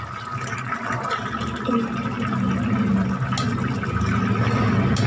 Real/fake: real